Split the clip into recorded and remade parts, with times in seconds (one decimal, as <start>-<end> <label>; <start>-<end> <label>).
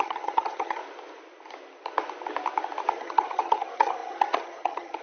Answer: 0.0-0.8 remade; 0.8-2.9 recorded; 2.9-5.0 remade